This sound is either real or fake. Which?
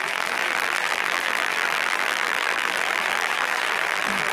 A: fake